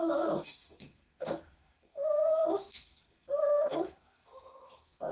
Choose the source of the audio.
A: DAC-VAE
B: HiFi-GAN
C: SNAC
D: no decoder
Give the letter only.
C